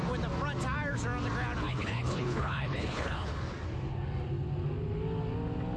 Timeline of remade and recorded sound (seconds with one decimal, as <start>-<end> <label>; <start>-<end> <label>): 0.0-1.6 recorded; 1.6-3.4 remade; 3.4-5.8 recorded